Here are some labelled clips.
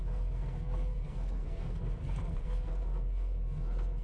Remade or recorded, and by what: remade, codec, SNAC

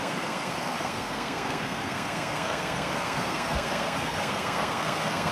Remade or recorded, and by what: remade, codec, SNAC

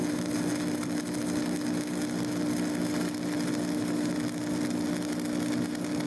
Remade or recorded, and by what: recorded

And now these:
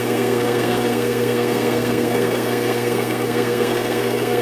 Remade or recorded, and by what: remade, codec, SNAC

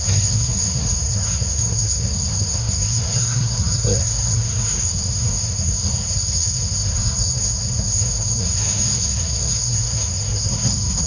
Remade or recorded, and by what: remade, codec, SNAC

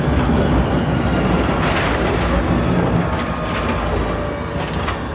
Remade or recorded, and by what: recorded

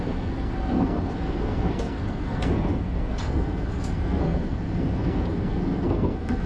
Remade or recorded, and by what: remade, codec, SNAC